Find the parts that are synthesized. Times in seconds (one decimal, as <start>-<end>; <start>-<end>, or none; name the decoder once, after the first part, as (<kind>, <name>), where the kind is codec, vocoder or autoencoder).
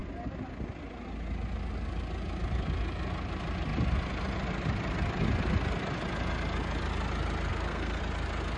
7.5-8.0 (codec, SNAC)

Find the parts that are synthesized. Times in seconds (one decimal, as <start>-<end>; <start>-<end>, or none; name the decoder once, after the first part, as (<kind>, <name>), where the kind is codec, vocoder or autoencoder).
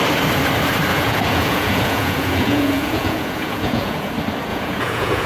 0.9-4.1 (vocoder, Vocos); 4.5-5.3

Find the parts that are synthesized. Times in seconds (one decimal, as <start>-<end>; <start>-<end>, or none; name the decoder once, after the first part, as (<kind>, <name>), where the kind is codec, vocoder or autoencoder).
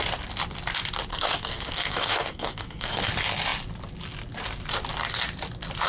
1.1-3.1 (codec, SNAC)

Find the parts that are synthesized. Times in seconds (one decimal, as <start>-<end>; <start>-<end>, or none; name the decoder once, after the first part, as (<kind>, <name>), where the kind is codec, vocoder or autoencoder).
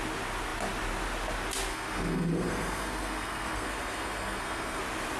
1.7-4.8 (codec, SNAC)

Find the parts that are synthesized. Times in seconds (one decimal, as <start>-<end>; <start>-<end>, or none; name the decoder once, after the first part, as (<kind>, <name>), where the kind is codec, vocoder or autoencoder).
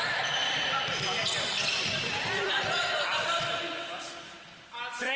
0.4-3.5 (vocoder, BigVGAN v2)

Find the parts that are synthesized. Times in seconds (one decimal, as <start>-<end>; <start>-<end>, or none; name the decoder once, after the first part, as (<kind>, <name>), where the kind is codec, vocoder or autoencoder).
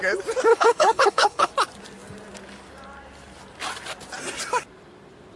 0.5-1.5 (codec, HILCodec)